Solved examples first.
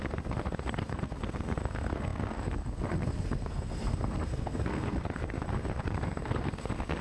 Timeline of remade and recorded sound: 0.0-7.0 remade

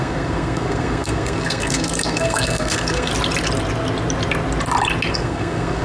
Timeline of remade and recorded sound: 0.0-3.1 remade; 3.1-5.1 recorded; 5.1-5.8 remade

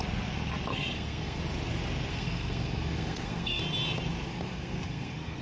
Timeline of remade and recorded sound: 0.0-0.7 recorded; 0.7-1.4 remade; 1.4-2.1 recorded; 2.1-3.6 remade; 3.6-4.3 recorded; 4.3-5.4 remade

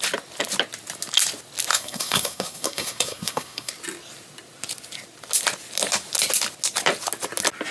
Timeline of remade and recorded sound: 0.0-1.7 recorded; 1.7-3.7 remade; 3.7-7.7 recorded

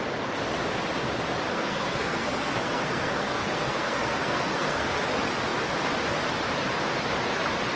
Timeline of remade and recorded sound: 0.0-1.5 recorded; 1.5-5.0 remade; 5.0-7.8 recorded

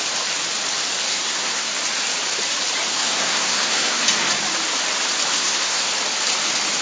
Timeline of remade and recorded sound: 0.0-1.1 recorded; 1.1-1.7 remade; 1.7-2.9 recorded; 2.9-4.0 remade; 4.0-5.3 recorded; 5.3-5.9 remade; 5.9-6.8 recorded